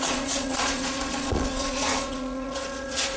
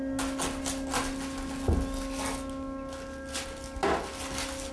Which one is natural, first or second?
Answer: second